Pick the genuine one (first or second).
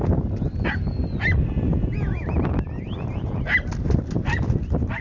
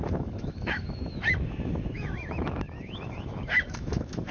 first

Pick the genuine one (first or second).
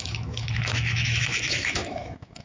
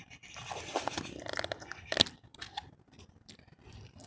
second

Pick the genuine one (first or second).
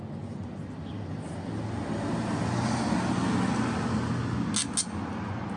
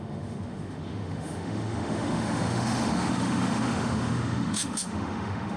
first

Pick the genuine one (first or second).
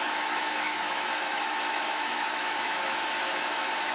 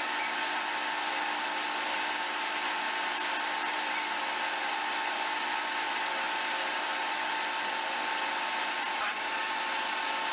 second